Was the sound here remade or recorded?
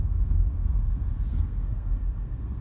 remade